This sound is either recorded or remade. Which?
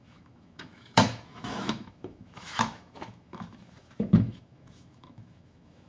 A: remade